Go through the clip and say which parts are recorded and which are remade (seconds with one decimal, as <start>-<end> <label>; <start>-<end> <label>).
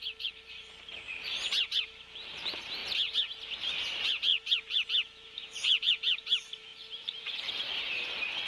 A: 0.0-2.8 remade; 2.8-3.9 recorded; 3.9-8.5 remade